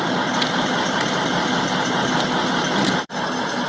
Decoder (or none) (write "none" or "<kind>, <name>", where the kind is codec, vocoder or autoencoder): none